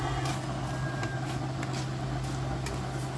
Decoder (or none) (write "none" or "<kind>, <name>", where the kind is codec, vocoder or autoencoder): none